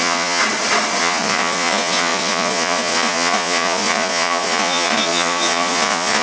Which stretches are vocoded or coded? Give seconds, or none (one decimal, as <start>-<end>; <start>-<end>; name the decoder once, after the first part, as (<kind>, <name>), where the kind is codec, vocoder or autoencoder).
0.0-0.4 (vocoder, Vocos); 1.0-6.2